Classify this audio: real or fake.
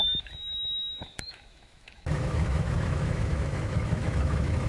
fake